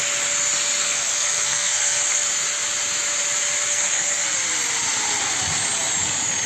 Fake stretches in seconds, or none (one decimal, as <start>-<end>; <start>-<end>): 0.8-2.2; 3.7-4.3